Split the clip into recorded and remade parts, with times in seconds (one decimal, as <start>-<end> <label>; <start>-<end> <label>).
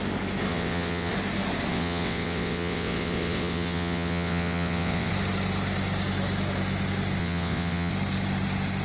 0.0-0.5 recorded; 0.5-1.1 remade; 1.1-1.7 recorded; 1.7-5.1 remade; 5.1-7.2 recorded; 7.2-7.9 remade; 7.9-8.8 recorded